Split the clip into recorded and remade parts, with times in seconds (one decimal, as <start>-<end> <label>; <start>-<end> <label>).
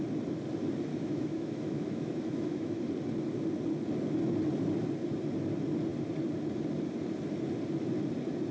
0.0-0.9 recorded; 0.9-2.8 remade; 2.8-8.5 recorded